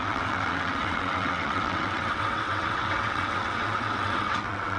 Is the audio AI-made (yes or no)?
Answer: yes